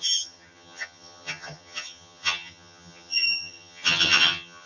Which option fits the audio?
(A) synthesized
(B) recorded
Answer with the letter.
A